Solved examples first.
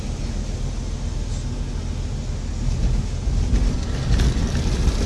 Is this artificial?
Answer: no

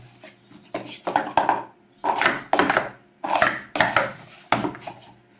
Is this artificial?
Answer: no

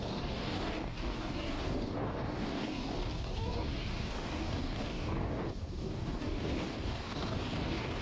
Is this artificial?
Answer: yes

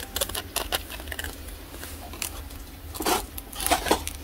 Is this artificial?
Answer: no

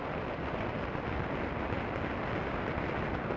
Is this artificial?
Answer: no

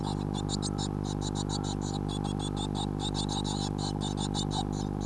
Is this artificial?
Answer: no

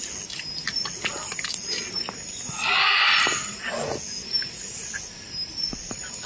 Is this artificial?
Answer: no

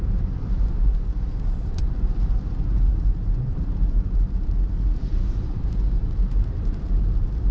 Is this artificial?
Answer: yes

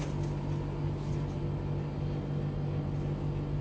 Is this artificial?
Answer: no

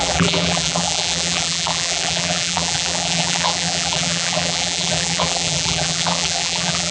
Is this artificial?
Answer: yes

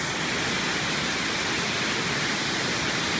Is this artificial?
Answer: no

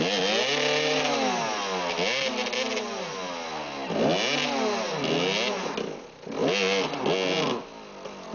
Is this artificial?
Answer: no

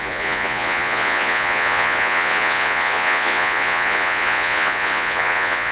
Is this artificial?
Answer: yes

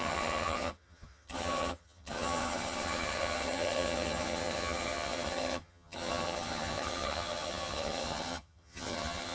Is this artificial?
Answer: yes